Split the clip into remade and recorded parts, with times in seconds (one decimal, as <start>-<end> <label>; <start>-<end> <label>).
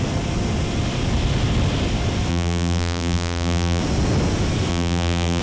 0.0-2.3 recorded; 2.3-3.8 remade; 3.8-4.7 recorded; 4.7-5.4 remade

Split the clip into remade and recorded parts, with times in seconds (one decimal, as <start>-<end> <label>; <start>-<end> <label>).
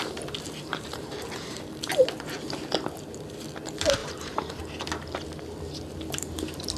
0.0-0.7 recorded; 0.7-1.9 remade; 1.9-4.0 recorded; 4.0-4.6 remade; 4.6-6.8 recorded